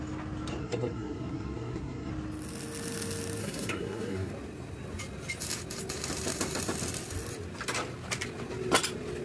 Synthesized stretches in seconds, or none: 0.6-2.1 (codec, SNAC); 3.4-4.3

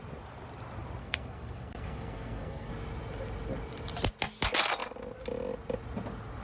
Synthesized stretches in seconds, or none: 1.0-2.7 (codec, SNAC)

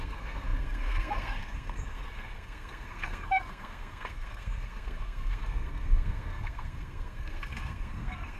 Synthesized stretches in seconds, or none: 0.0-8.4 (codec, SNAC)

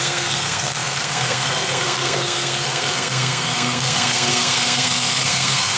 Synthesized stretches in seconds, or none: 0.0-5.8 (codec, SNAC)

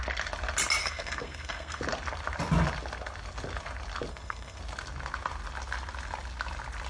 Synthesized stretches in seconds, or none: 0.8-1.8 (codec, SNAC); 4.1-4.6

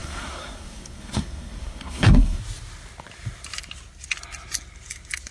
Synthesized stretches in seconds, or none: 0.0-2.4 (codec, SNAC)